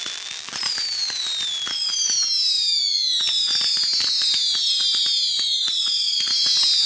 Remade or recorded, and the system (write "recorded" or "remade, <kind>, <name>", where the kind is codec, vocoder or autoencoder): recorded